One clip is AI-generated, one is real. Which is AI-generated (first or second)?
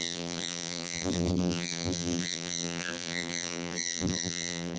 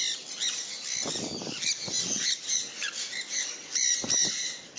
first